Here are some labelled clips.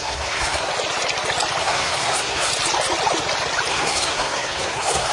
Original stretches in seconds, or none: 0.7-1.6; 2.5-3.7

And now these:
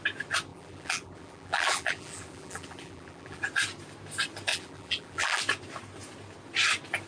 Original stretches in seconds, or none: 0.0-0.5; 3.4-4.5; 5.4-7.1

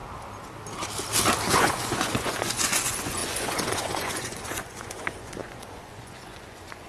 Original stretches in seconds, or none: 0.0-1.5

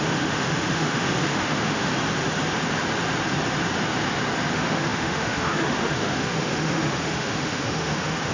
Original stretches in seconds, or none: 1.9-4.5

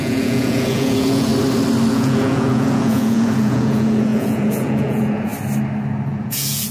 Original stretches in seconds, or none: 1.3-1.9; 5.3-6.1

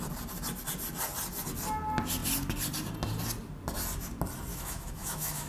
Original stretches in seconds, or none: 0.0-4.5